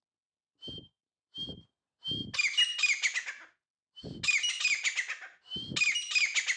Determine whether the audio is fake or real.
real